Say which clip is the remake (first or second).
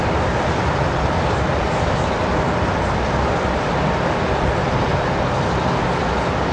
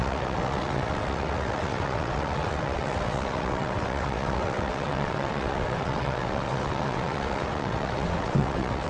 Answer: second